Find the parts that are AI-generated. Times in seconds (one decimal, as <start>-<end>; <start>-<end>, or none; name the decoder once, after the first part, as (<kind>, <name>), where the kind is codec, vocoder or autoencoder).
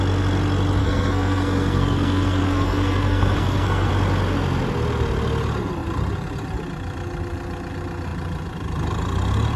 0.8-3.9 (codec, SNAC)